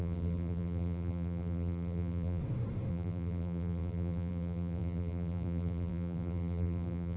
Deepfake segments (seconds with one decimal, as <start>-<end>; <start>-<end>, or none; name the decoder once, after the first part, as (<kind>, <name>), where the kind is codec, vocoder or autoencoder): 0.0-2.4 (vocoder, BigVGAN v2); 2.9-7.2

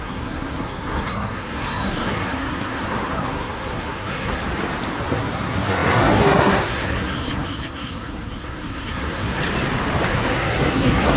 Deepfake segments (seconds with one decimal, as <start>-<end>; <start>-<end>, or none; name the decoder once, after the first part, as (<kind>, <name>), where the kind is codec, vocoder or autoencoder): 0.0-4.4 (codec, SNAC); 5.1-9.4; 10.1-11.2

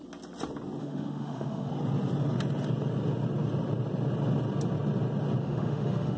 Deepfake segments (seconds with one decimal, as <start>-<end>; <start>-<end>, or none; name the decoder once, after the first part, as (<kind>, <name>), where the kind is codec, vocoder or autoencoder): 0.8-1.7 (autoencoder, DAC-VAE); 5.4-6.2